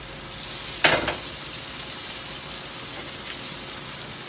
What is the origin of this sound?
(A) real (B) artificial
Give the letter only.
A